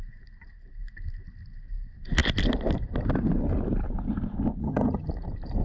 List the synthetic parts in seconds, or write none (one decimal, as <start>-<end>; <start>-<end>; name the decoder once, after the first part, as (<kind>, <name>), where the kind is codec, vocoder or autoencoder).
4.6-5.1 (vocoder, HiFi-GAN)